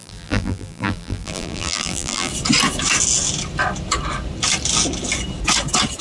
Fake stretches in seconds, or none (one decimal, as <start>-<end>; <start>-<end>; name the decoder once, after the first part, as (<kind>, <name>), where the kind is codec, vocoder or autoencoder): 0.0-2.3 (vocoder, BigVGAN v2)